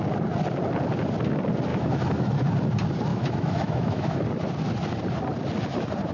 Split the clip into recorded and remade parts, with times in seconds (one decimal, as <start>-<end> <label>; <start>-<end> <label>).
0.0-1.7 recorded; 1.7-2.3 remade; 2.3-3.1 recorded; 3.1-4.2 remade; 4.2-6.1 recorded